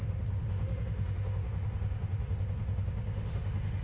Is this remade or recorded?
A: remade